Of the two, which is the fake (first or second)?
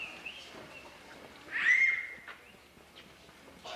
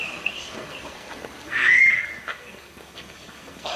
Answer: second